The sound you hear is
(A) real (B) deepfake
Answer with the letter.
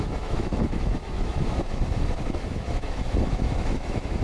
B